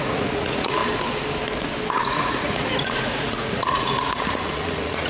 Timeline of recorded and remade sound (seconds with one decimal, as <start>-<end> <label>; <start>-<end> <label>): 0.0-0.8 remade; 0.8-1.9 recorded; 1.9-5.1 remade